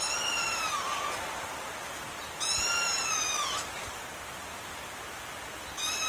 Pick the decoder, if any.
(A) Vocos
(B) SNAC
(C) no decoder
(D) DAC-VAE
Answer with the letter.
C